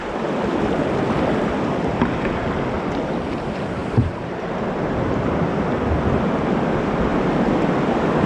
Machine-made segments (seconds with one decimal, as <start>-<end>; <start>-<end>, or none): 3.8-5.6

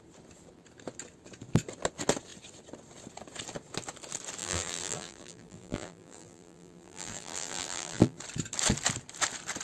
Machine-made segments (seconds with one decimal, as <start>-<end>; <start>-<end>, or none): 4.4-8.2

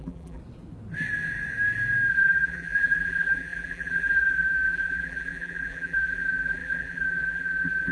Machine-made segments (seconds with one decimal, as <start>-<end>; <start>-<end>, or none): 0.0-0.4; 2.1-7.9

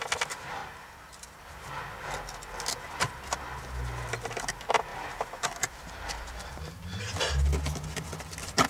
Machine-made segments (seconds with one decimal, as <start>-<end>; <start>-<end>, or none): 0.6-1.4; 4.9-7.0